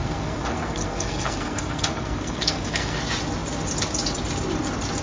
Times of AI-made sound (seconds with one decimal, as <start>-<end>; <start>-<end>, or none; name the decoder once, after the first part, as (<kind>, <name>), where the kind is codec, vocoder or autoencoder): 0.0-3.0 (codec, SNAC)

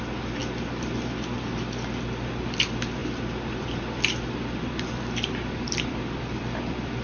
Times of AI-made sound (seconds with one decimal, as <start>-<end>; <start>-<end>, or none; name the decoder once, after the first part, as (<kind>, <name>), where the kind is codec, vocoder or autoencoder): 3.0-7.0 (vocoder, BigVGAN v2)

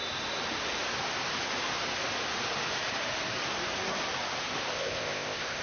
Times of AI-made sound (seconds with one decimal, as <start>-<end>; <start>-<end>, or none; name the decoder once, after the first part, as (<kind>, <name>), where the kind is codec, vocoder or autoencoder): 4.7-5.6 (codec, ZipCodec)

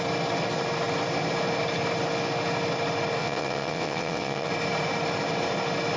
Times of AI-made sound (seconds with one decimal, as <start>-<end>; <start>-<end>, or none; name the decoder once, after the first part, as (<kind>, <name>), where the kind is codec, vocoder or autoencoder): 3.2-4.5 (vocoder, WaveNeXt)

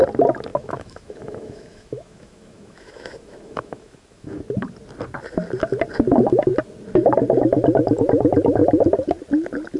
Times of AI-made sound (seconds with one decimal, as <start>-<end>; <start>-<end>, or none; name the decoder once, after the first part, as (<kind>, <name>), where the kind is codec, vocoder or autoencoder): 0.5-4.4 (autoencoder, DAC-VAE)

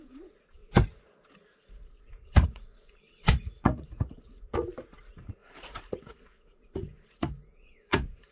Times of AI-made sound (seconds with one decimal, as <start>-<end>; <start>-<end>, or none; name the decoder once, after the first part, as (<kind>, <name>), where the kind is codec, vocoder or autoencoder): 0.0-0.6 (vocoder, Vocos); 2.1-8.3

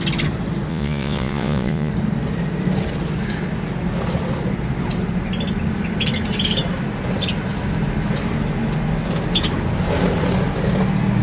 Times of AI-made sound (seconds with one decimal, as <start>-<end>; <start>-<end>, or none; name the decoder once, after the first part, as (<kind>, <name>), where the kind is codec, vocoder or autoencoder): 0.7-1.9 (vocoder, Vocos)